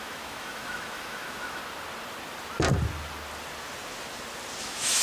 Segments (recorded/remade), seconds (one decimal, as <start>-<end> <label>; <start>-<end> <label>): 0.0-1.6 remade; 1.6-4.6 recorded; 4.6-5.0 remade